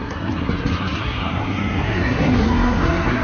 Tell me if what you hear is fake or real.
fake